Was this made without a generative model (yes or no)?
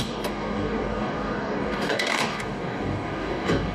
no